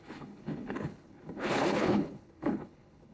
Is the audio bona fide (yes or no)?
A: no